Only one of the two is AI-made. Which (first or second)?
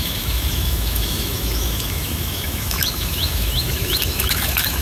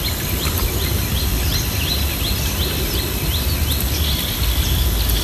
first